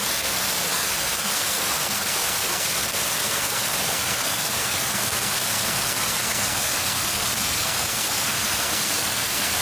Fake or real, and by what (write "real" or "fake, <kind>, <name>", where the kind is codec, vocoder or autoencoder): fake, codec, SNAC